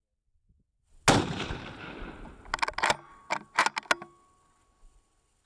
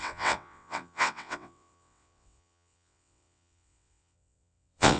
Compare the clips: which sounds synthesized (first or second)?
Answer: second